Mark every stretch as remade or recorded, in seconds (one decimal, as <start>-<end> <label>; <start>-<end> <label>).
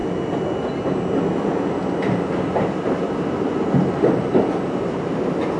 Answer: 0.0-5.6 recorded